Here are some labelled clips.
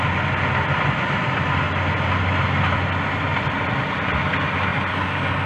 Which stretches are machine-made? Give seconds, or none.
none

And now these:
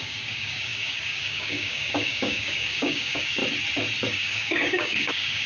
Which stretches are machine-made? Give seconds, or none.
0.0-3.4 (codec, DAC); 4.1-5.5

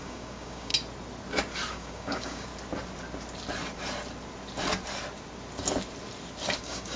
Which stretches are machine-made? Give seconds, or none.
0.0-0.7 (codec, DAC); 1.7-2.5; 6.6-7.0

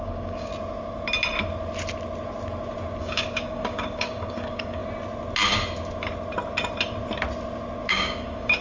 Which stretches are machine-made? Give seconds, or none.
0.0-0.5 (codec, DAC); 3.0-4.8; 7.9-8.6